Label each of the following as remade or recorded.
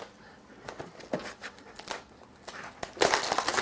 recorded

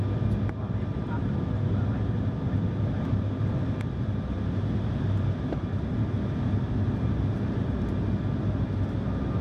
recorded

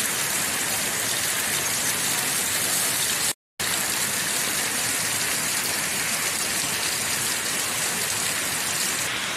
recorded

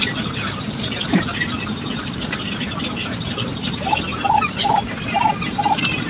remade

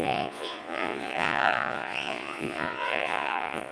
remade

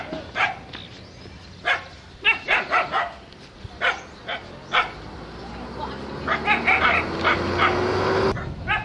recorded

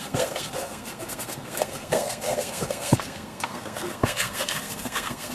remade